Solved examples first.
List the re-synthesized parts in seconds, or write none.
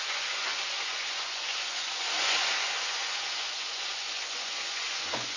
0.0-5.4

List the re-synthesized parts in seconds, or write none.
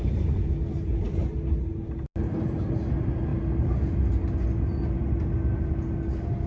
none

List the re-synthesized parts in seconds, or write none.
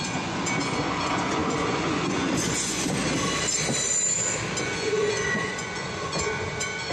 0.0-3.0; 4.6-6.9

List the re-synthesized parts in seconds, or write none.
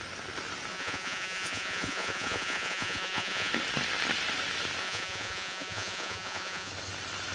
0.7-3.5; 4.8-6.7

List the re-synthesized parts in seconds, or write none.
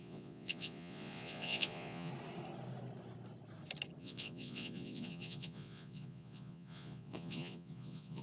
0.0-2.1; 4.0-8.2